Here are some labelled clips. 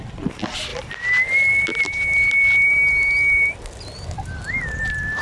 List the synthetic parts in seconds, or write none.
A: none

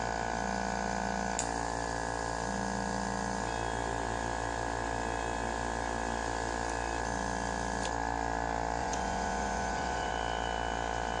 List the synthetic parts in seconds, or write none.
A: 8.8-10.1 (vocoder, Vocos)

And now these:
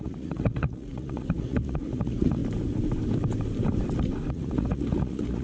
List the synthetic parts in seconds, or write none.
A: 0.0-2.4 (vocoder, Vocos); 4.3-5.4